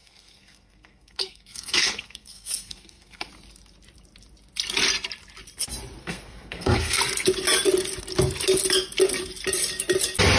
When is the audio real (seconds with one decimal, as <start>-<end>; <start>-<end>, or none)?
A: 3.3-6.0; 7.0-10.4